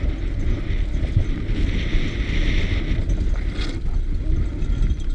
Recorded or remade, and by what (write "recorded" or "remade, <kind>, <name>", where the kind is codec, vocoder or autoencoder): recorded